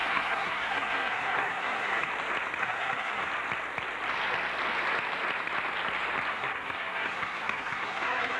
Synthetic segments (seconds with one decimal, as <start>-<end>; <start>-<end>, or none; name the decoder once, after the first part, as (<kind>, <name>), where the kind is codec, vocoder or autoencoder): 0.0-2.1 (codec, SNAC); 2.6-3.3; 6.3-8.4